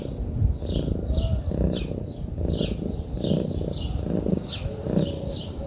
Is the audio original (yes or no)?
yes